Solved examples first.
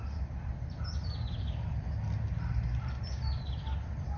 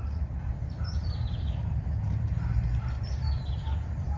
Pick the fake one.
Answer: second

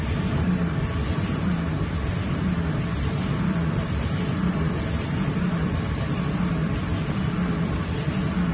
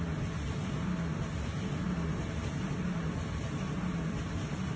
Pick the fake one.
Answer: first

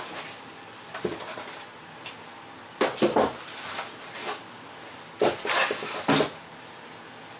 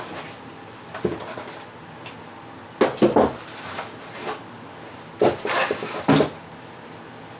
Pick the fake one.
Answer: first